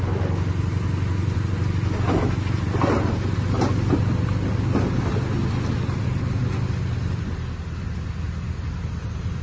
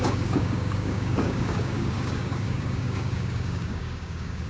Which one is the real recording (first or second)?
first